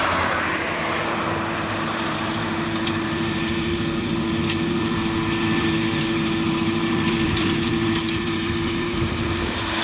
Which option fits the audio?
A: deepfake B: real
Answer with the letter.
A